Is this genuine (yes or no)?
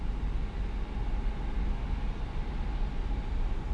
yes